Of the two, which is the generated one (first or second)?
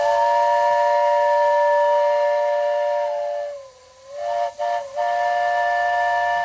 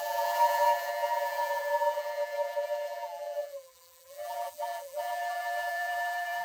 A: second